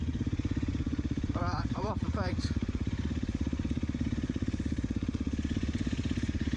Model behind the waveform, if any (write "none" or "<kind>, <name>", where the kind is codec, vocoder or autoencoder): vocoder, Vocos